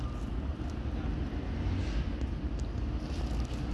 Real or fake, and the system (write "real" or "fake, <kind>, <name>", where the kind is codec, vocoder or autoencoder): real